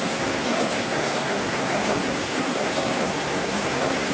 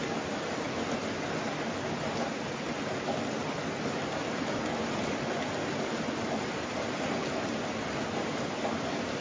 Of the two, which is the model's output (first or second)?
first